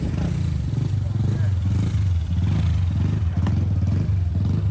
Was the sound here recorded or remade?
recorded